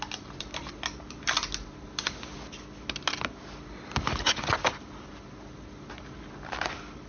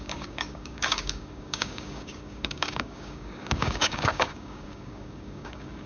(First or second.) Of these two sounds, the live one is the first